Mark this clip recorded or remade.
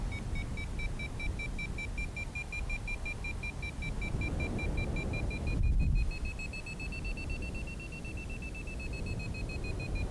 recorded